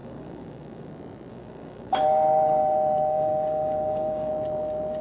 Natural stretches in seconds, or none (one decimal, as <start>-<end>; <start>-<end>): 0.9-1.3; 4.3-5.0